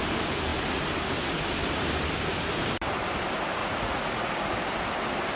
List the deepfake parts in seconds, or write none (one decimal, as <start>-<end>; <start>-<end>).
3.6-4.3

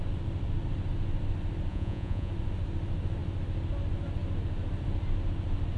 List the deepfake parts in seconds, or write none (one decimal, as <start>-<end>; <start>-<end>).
1.7-2.3